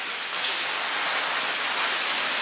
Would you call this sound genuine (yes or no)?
yes